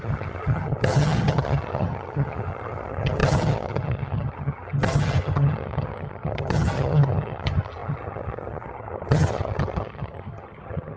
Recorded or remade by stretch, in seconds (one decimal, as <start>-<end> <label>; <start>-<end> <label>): 0.0-11.0 remade